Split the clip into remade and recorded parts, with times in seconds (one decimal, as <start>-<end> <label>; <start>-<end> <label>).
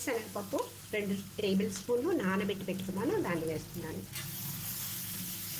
0.0-1.4 remade; 1.4-4.8 recorded; 4.8-5.6 remade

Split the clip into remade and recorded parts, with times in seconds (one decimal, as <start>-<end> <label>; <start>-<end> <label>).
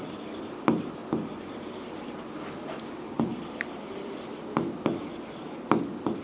0.0-6.2 recorded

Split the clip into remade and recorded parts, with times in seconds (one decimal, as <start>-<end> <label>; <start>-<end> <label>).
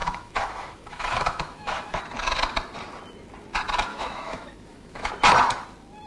0.0-2.0 remade; 2.0-3.9 recorded; 3.9-5.1 remade; 5.1-6.1 recorded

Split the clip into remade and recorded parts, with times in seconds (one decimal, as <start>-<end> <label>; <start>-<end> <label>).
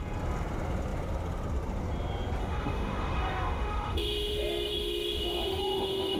0.0-2.4 recorded; 2.4-6.2 remade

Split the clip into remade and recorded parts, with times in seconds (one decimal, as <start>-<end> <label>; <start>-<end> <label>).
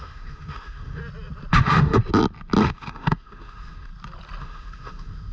0.0-1.0 remade; 1.0-1.5 recorded; 1.5-2.0 remade; 2.0-2.6 recorded; 2.6-3.9 remade; 3.9-4.4 recorded; 4.4-5.3 remade